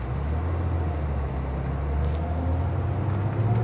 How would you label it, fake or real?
real